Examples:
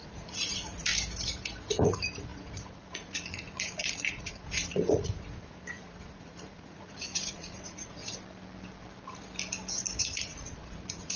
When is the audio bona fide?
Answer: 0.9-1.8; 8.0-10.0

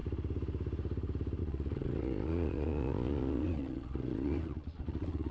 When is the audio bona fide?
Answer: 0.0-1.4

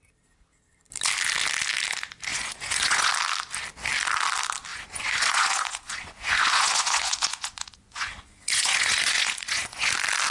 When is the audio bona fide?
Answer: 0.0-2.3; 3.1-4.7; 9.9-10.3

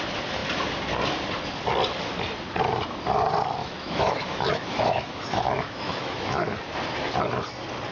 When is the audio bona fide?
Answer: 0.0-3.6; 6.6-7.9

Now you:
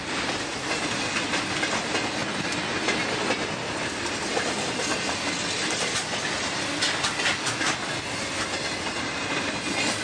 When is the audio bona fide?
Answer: 0.0-10.0